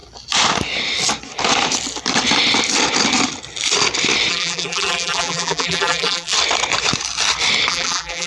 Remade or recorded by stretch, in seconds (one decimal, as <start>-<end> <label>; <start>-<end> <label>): 0.0-4.3 recorded; 4.3-6.3 remade; 6.3-7.7 recorded; 7.7-8.3 remade